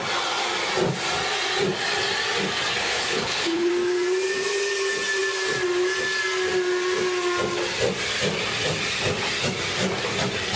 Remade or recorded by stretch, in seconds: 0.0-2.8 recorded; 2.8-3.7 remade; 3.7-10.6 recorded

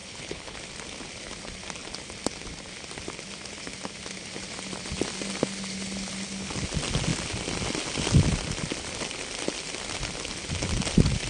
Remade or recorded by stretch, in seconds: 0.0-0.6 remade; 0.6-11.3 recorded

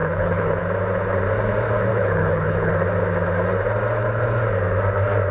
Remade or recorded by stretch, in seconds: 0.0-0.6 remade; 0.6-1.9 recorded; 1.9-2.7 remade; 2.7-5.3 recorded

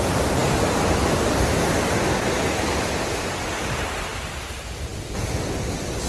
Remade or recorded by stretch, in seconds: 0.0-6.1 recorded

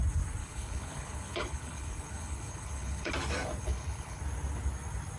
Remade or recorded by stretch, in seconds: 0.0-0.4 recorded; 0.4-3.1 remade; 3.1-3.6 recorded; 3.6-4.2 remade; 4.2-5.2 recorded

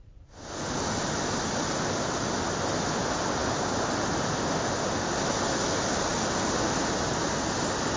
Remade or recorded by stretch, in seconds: 0.0-8.0 recorded

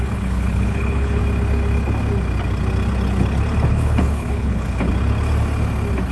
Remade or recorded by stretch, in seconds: 0.0-1.2 remade; 1.2-3.7 recorded; 3.7-4.9 remade; 4.9-6.1 recorded

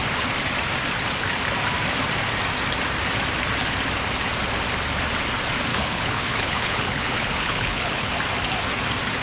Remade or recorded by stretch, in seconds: 0.0-5.7 recorded; 5.7-8.1 remade; 8.1-9.2 recorded